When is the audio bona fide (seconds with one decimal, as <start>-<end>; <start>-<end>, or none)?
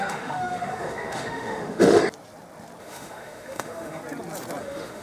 2.0-2.8; 4.0-4.6